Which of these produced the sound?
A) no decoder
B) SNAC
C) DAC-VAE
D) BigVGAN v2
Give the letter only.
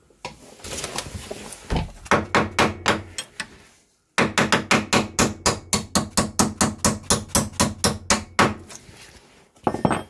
A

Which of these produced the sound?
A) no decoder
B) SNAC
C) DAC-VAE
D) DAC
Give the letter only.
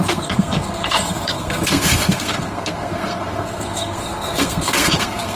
B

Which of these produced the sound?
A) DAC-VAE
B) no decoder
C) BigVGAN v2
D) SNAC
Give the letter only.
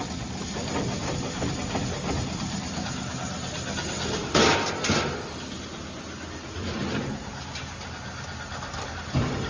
B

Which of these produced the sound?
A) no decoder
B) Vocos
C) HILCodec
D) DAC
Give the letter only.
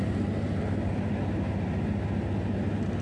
A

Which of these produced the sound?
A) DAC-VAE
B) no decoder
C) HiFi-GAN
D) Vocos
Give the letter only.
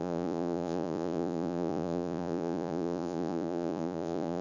D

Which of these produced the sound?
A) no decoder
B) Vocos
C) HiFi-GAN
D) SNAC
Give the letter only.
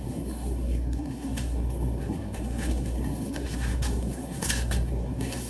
D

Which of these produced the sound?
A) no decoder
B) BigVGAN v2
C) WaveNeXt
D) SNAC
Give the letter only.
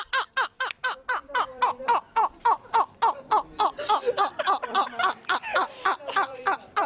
B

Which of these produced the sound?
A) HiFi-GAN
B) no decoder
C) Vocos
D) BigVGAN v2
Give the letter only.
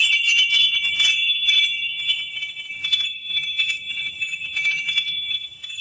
A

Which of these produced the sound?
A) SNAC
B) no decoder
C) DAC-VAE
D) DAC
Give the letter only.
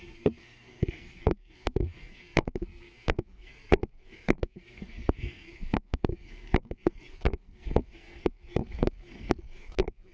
A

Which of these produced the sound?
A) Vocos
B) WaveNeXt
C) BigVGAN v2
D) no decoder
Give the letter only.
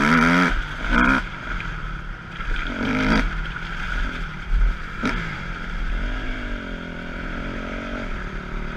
C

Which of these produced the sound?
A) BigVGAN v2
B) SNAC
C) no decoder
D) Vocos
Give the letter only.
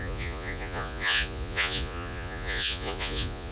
D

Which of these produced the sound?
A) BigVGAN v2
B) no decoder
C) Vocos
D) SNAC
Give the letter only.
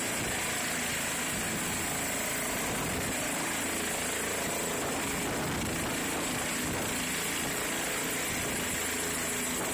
B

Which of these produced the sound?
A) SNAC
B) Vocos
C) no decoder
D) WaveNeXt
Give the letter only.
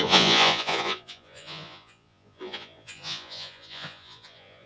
B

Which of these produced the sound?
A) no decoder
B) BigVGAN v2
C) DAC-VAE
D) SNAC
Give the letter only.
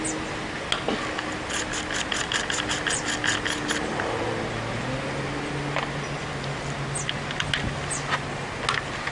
A